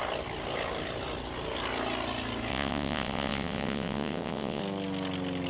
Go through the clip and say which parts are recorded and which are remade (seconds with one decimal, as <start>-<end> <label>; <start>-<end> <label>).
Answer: 0.0-2.5 recorded; 2.5-4.6 remade; 4.6-5.5 recorded